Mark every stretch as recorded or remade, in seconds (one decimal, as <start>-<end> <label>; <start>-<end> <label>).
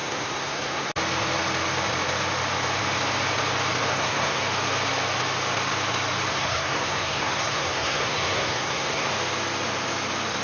0.0-0.9 remade; 0.9-3.9 recorded; 3.9-4.4 remade; 4.4-6.3 recorded; 6.3-9.1 remade; 9.1-10.4 recorded